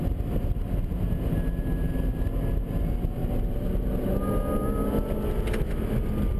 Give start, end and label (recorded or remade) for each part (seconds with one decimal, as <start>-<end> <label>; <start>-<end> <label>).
0.0-6.4 recorded